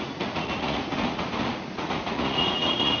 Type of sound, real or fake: fake